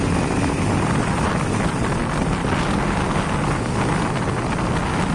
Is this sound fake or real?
real